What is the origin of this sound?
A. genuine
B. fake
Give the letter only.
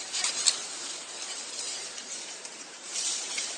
B